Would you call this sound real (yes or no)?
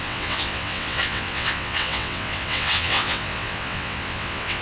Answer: no